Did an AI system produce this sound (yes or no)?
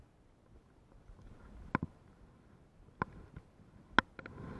no